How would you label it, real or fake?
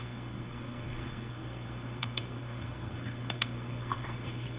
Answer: fake